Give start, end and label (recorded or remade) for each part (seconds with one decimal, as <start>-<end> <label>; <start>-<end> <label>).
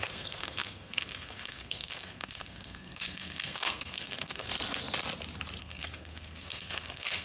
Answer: 0.0-4.5 remade; 4.5-5.6 recorded; 5.6-7.2 remade